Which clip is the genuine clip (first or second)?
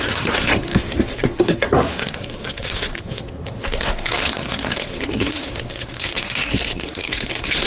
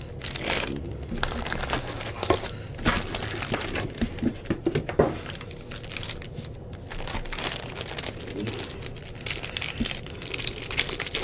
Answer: second